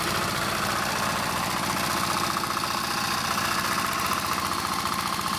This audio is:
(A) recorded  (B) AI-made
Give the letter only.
A